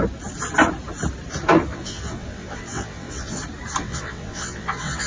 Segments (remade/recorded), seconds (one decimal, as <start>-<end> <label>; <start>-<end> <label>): 0.0-1.7 recorded; 1.7-3.4 remade; 3.4-3.8 recorded; 3.8-5.1 remade